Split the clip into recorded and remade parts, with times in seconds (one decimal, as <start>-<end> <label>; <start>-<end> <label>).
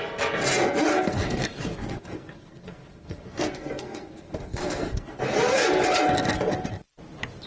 0.0-0.9 recorded; 0.9-5.2 remade; 5.2-7.5 recorded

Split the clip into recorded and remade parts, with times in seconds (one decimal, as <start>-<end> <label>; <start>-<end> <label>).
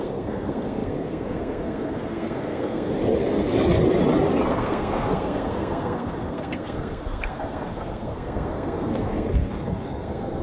0.0-2.9 remade; 2.9-4.5 recorded; 4.5-10.4 remade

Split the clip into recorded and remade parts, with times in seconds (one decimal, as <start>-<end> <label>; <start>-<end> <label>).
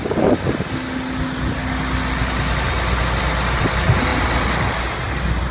0.0-5.5 recorded